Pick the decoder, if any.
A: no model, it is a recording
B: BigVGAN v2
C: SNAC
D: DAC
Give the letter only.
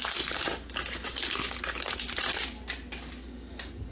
A